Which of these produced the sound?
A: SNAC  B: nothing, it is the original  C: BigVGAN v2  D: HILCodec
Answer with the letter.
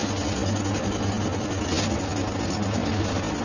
B